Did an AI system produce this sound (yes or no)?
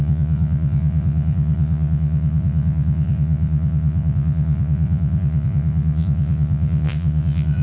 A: yes